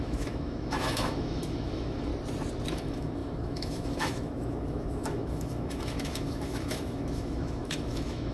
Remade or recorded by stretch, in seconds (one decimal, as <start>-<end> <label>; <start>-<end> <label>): 0.0-2.1 remade; 2.1-2.7 recorded; 2.7-8.3 remade

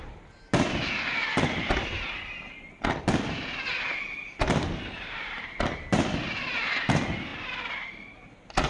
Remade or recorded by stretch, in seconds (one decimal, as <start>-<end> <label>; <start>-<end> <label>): 0.0-8.7 recorded